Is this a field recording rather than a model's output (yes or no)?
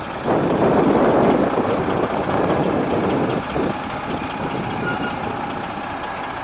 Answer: yes